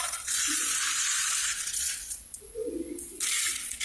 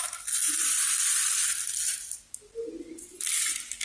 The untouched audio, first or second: second